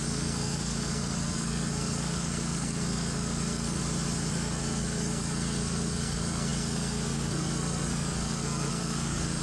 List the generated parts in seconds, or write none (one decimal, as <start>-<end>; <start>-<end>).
0.0-3.8; 4.3-9.4